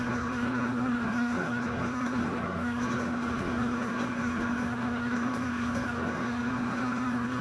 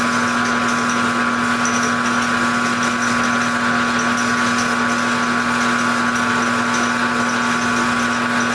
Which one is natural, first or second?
second